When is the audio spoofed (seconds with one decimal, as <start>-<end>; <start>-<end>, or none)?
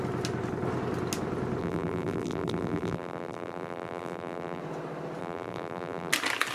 1.6-4.6; 5.2-6.1